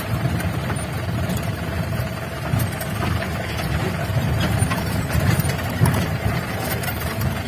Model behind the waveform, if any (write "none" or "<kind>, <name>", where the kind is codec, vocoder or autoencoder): vocoder, BigVGAN v2